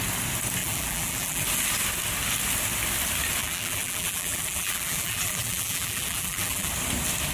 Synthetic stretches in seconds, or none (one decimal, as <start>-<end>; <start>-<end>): 0.6-1.4; 3.4-6.7